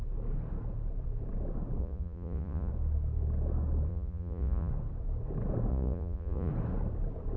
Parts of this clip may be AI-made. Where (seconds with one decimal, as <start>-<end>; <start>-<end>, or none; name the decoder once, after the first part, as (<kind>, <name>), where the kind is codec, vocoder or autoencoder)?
1.8-2.7 (vocoder, Vocos); 3.9-4.7; 5.7-6.5